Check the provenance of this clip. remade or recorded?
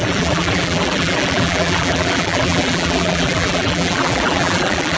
remade